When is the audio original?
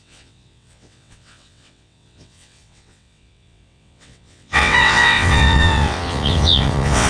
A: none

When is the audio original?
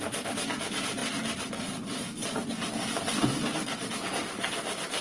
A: 0.0-5.0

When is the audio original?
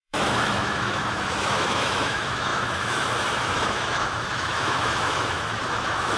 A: none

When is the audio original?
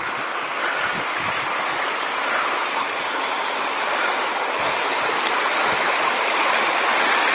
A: 0.0-7.3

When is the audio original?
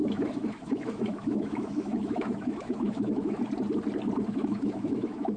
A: 3.4-4.3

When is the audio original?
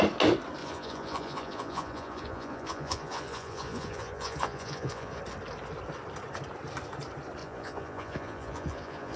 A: 0.0-0.6; 5.2-7.4